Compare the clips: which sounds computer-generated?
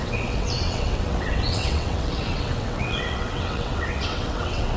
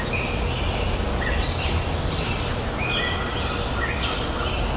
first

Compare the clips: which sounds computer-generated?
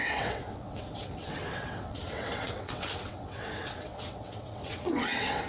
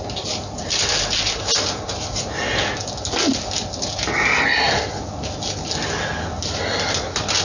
first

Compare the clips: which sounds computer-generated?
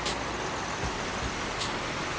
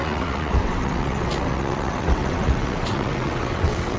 second